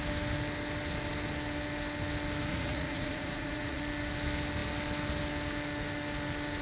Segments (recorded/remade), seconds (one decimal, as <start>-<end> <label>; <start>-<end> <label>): 0.0-2.5 recorded; 2.5-3.8 remade; 3.8-6.6 recorded